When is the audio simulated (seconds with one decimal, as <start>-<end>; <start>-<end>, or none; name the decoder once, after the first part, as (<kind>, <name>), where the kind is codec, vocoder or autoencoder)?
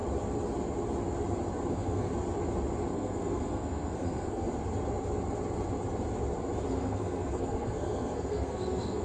1.7-2.1 (codec, SNAC); 2.9-4.5; 6.7-9.0